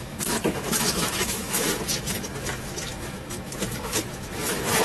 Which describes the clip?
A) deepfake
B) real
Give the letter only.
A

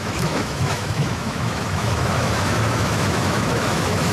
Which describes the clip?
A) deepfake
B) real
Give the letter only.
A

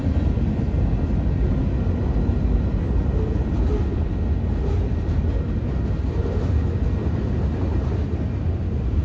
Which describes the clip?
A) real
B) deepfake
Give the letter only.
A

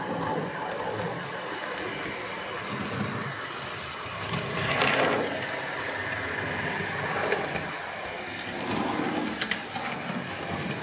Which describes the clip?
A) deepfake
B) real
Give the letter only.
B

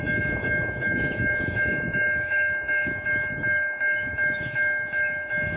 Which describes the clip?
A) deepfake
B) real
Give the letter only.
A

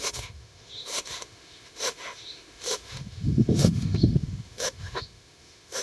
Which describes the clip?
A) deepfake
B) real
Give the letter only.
A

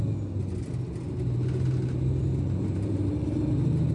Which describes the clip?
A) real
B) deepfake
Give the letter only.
A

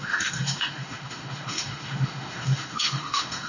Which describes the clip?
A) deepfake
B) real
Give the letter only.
A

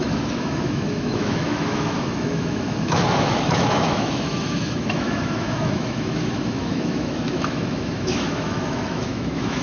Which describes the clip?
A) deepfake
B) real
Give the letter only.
A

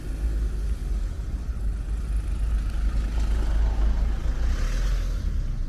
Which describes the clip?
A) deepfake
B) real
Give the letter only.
B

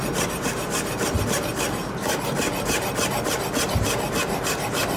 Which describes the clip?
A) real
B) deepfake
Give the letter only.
A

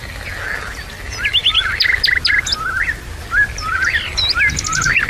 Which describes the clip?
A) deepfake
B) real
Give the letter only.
B